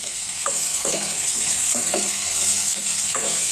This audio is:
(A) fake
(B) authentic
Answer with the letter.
A